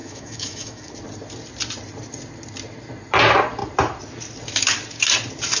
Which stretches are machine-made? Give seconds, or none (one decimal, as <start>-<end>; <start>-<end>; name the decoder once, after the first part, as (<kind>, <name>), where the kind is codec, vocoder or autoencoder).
0.0-0.9 (autoencoder, DAC-VAE)